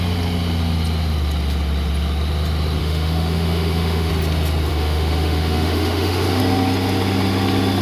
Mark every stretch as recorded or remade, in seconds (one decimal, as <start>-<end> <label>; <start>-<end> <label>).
0.0-2.8 recorded; 2.8-4.1 remade; 4.1-4.7 recorded; 4.7-6.4 remade; 6.4-7.8 recorded